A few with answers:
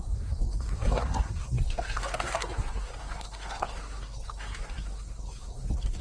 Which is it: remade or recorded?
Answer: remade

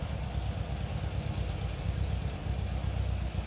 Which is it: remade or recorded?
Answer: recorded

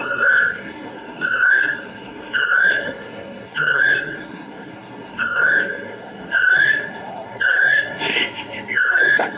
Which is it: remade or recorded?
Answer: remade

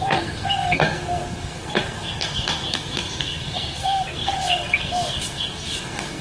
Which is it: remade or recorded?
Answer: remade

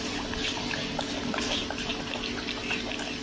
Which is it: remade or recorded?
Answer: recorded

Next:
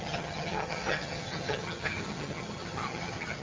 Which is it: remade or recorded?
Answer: remade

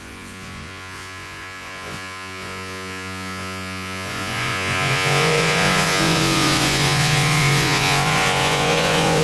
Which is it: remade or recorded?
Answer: remade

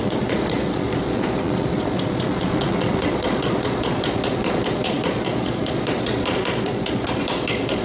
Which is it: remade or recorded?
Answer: remade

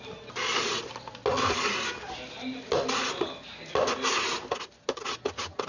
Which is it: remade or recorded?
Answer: recorded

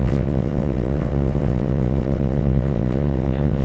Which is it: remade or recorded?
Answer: remade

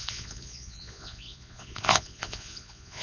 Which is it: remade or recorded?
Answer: remade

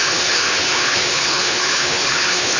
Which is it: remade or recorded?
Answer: remade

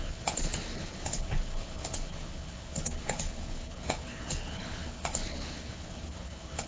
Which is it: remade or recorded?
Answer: remade